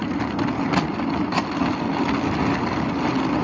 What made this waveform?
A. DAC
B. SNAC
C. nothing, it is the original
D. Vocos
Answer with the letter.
C